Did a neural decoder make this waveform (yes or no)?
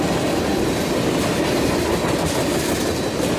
no